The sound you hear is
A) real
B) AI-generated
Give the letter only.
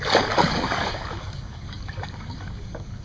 B